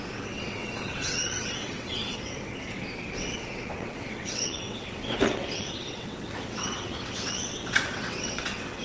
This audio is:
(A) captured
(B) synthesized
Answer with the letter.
B